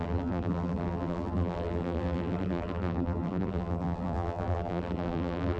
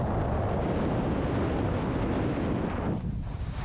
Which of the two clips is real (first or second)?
second